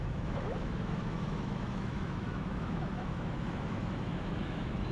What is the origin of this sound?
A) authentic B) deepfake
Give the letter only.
B